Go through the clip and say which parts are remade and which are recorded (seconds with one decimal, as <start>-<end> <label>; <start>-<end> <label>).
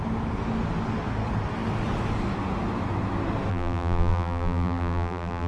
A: 0.0-3.5 recorded; 3.5-5.5 remade